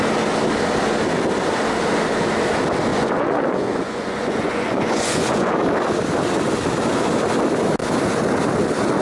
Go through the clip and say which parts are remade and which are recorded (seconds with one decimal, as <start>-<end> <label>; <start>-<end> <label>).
0.0-2.9 recorded; 2.9-5.5 remade; 5.5-9.0 recorded

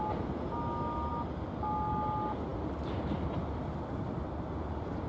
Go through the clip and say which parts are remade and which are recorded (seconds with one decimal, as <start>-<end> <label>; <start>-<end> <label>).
0.0-5.1 recorded

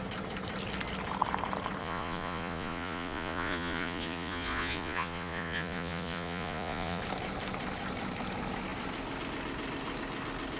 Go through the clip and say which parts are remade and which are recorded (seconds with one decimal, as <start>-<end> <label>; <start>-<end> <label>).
0.0-1.8 recorded; 1.8-7.0 remade; 7.0-10.6 recorded

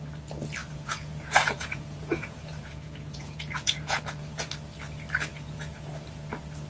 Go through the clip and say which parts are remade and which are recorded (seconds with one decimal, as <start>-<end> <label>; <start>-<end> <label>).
0.0-0.6 recorded; 0.6-4.5 remade; 4.5-5.3 recorded; 5.3-5.8 remade; 5.8-6.7 recorded

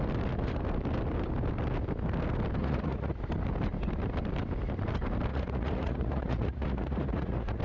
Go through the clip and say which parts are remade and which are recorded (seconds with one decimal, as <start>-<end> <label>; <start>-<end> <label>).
0.0-2.6 recorded; 2.6-3.2 remade; 3.2-5.3 recorded; 5.3-7.6 remade

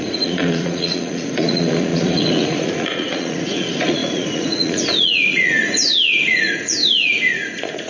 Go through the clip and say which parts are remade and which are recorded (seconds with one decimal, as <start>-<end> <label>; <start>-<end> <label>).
0.0-7.9 remade

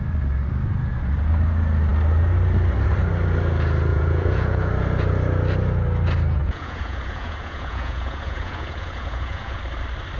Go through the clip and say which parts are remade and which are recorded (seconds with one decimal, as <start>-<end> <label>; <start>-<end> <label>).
0.0-3.9 recorded; 3.9-4.7 remade; 4.7-6.4 recorded; 6.4-9.6 remade; 9.6-10.2 recorded